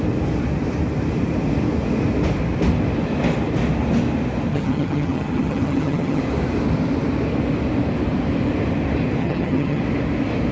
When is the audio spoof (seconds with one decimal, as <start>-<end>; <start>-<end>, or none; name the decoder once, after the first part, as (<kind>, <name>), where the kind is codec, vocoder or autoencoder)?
4.5-6.2 (vocoder, HiFi-GAN); 9.2-9.8